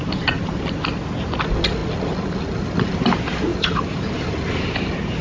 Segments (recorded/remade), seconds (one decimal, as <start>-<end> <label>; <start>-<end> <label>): 0.0-3.5 recorded; 3.5-4.3 remade; 4.3-5.2 recorded